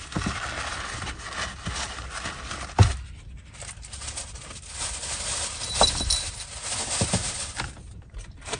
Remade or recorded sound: recorded